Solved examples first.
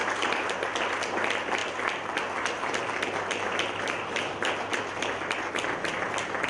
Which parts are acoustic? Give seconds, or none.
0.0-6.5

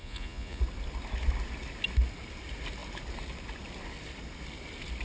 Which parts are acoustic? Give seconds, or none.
0.6-5.0

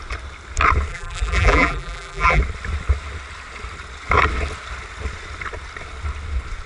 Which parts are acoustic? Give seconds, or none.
0.0-0.9; 2.4-6.7

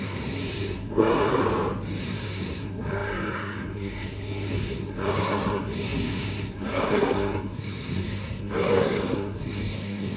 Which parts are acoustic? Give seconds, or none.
1.4-2.0